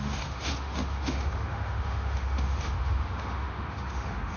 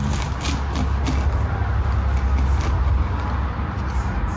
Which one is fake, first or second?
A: first